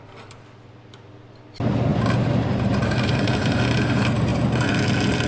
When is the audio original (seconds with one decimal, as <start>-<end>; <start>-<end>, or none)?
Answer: 0.0-1.9; 3.5-5.3